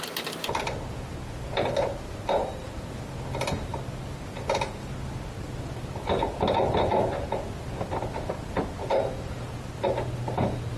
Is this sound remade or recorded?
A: recorded